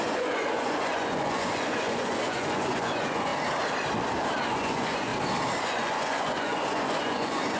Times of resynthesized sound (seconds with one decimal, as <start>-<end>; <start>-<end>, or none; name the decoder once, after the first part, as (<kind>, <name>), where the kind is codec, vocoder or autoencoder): 0.0-3.3 (vocoder, Vocos); 4.5-5.1; 5.6-7.6